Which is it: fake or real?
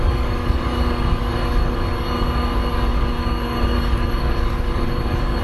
fake